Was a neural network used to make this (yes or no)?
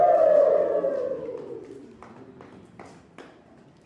no